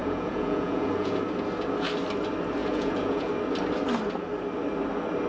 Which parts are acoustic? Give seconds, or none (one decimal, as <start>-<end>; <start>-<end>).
1.2-2.6; 3.3-5.3